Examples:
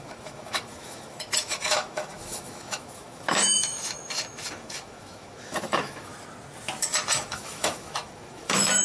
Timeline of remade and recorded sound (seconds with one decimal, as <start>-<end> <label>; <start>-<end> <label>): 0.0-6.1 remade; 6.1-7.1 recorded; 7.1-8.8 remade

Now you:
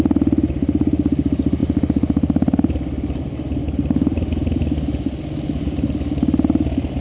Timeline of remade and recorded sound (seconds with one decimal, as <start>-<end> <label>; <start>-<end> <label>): 0.0-7.0 recorded

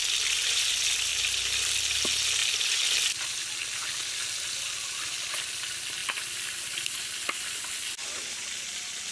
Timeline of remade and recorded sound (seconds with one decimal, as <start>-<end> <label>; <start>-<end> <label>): 0.0-1.1 recorded; 1.1-1.8 remade; 1.8-9.1 recorded

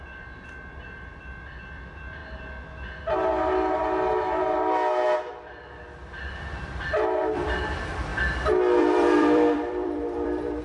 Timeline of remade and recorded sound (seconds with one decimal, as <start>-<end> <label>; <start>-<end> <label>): 0.0-2.2 remade; 2.2-5.3 recorded; 5.3-8.1 remade; 8.1-8.8 recorded; 8.8-10.6 remade

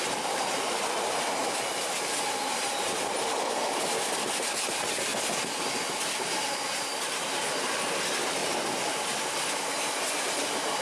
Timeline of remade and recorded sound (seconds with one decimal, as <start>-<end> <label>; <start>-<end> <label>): 0.0-8.4 recorded; 8.4-9.1 remade; 9.1-10.8 recorded

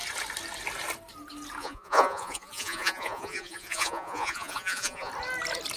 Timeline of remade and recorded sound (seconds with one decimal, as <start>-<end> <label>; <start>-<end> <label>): 0.0-1.6 recorded; 1.6-5.1 remade; 5.1-5.8 recorded